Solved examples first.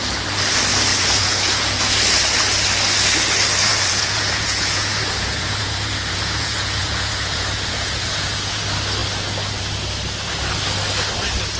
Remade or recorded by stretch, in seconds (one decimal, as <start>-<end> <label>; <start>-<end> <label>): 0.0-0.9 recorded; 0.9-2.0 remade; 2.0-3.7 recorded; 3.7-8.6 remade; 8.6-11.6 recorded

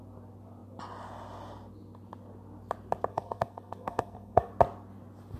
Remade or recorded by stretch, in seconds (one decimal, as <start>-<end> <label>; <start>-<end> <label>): 0.0-3.1 recorded; 3.1-4.5 remade; 4.5-5.4 recorded

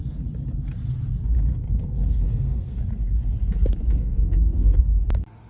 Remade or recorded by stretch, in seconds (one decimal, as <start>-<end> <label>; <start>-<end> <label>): 0.0-1.5 recorded; 1.5-2.8 remade; 2.8-4.0 recorded; 4.0-4.8 remade; 4.8-5.5 recorded

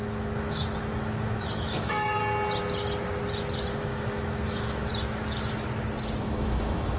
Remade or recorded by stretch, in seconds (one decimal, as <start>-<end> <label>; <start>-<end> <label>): 0.0-2.2 remade; 2.2-3.7 recorded; 3.7-4.9 remade; 4.9-6.2 recorded; 6.2-7.0 remade

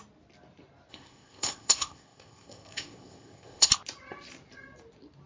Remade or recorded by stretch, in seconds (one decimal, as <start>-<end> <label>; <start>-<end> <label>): 0.0-0.9 recorded; 0.9-3.7 remade; 3.7-5.3 recorded

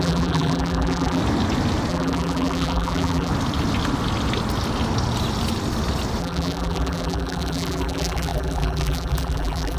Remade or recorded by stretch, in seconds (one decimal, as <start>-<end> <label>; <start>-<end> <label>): 0.0-1.2 remade; 1.2-1.9 recorded; 1.9-3.3 remade; 3.3-6.2 recorded; 6.2-9.8 remade

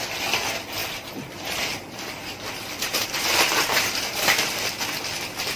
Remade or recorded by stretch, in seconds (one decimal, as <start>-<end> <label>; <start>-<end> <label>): 0.0-0.8 recorded; 0.8-4.2 remade; 4.2-5.6 recorded

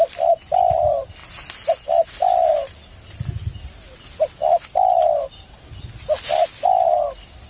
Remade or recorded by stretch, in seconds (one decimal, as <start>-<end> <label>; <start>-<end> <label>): 0.0-7.5 recorded